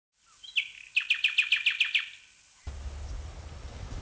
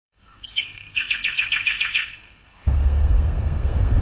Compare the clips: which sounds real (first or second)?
first